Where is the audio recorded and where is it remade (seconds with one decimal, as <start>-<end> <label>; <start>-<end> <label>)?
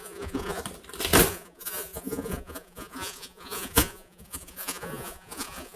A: 0.0-0.6 remade; 0.6-1.3 recorded; 1.3-5.8 remade